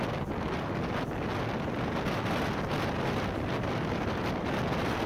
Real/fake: real